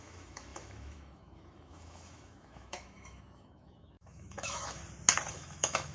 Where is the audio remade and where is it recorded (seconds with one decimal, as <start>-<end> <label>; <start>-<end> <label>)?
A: 0.0-4.8 remade; 4.8-5.3 recorded; 5.3-5.9 remade